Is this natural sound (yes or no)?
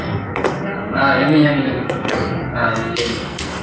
no